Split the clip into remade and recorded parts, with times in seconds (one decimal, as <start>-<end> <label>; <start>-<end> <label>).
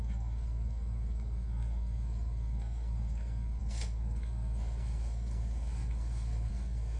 0.0-7.0 remade